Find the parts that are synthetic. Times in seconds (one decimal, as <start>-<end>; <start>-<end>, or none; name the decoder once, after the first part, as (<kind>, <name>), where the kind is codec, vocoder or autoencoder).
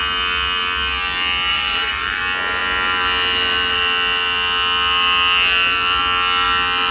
1.5-2.2 (vocoder, BigVGAN v2)